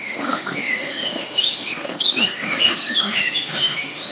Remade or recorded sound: remade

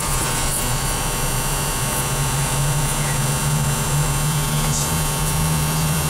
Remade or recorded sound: remade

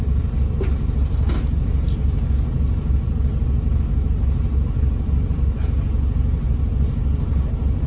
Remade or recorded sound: recorded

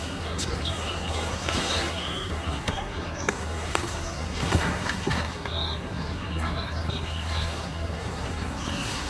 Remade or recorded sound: remade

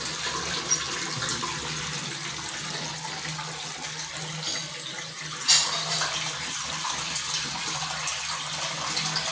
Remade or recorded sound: recorded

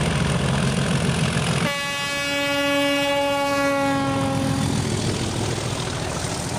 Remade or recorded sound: recorded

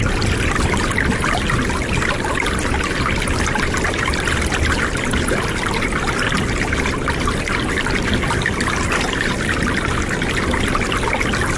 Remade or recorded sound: recorded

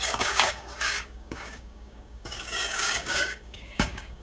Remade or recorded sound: remade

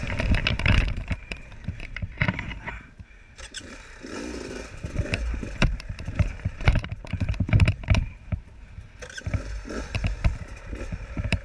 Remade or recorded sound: remade